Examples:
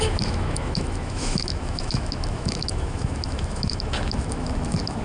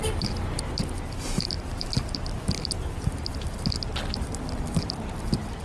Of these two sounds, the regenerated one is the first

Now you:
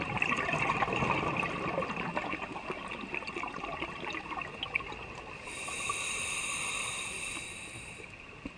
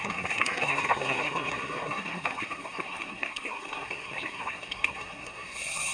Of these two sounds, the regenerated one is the second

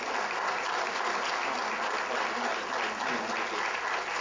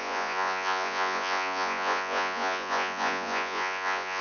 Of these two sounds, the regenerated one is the second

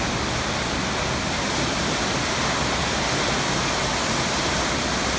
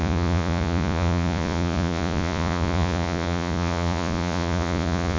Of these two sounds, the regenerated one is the second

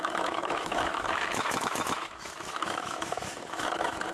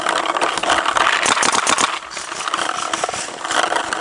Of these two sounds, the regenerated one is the first